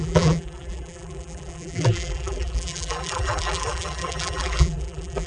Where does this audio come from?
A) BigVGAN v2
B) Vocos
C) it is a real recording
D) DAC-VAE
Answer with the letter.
A